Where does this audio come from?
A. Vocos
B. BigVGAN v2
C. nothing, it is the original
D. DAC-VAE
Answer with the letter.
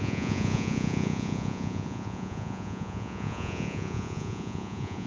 A